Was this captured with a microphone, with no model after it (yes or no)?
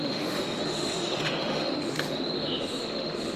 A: no